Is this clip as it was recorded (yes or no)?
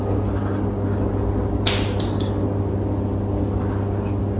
yes